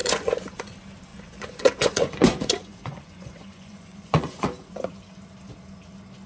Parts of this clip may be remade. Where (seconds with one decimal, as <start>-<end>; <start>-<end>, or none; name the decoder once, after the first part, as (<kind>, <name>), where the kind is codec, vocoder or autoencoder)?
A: 0.0-0.7 (vocoder, Vocos); 1.1-4.9